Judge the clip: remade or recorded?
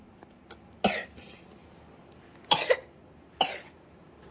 recorded